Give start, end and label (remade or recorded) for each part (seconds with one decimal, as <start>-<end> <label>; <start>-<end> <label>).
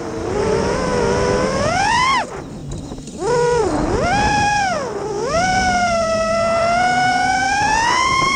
0.0-0.9 remade; 0.9-1.5 recorded; 1.5-2.6 remade; 2.6-7.4 recorded; 7.4-8.4 remade